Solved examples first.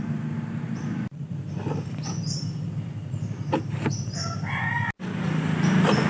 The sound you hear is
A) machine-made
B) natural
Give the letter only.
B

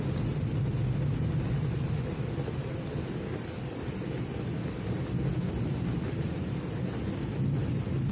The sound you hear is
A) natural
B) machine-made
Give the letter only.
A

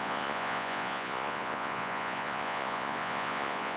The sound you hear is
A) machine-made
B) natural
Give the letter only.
A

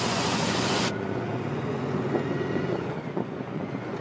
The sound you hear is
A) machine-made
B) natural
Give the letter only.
A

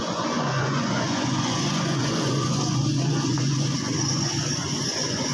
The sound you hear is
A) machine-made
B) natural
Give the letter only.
A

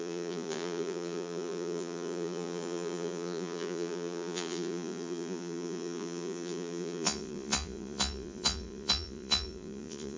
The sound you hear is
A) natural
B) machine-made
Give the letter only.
B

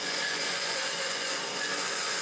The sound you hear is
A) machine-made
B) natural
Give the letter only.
A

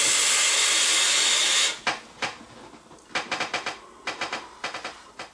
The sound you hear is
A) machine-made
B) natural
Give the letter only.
B